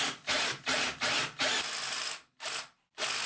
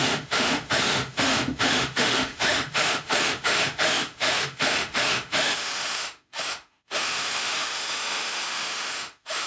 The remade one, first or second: second